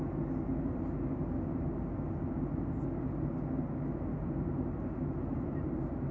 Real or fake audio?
real